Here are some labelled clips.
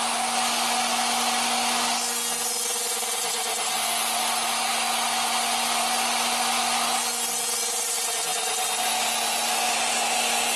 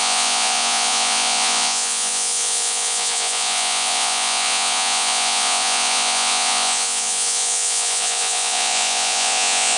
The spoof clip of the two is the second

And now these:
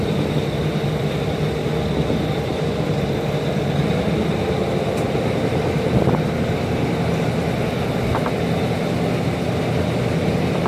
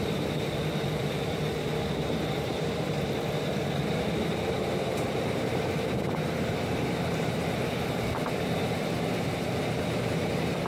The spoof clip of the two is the second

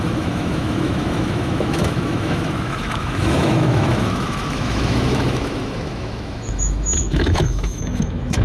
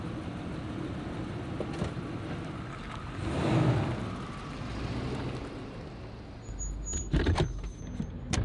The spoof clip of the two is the first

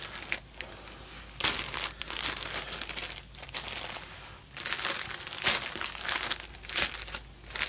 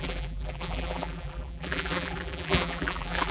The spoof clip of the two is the second